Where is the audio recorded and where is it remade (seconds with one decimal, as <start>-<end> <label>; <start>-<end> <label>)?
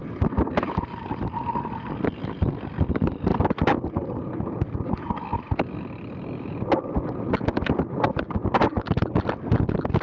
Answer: 0.0-10.0 recorded